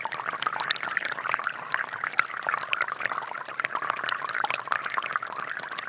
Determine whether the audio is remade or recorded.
recorded